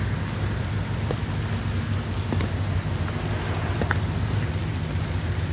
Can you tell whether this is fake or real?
real